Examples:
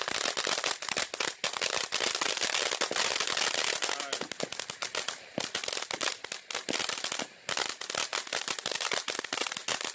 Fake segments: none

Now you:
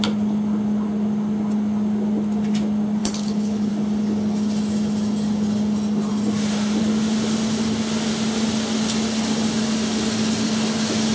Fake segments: 3.0-3.7 (codec, HILCodec)

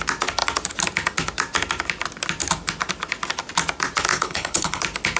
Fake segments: 4.1-4.8 (codec, HILCodec)

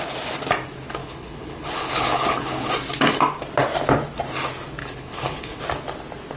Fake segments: 1.0-2.7 (codec, HILCodec); 4.8-5.6

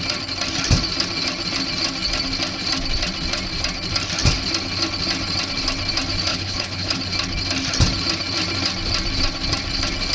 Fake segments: 6.3-7.0 (codec, HILCodec)